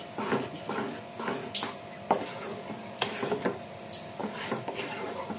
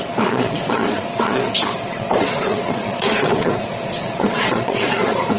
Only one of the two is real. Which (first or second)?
first